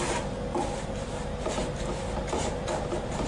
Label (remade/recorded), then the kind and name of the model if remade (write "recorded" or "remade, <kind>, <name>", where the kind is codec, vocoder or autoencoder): recorded